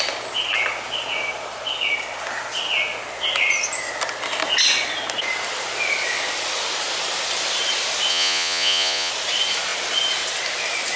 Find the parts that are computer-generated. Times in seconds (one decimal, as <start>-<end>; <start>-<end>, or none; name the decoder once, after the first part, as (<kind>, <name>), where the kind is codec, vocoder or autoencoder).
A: 8.1-9.1 (vocoder, Vocos)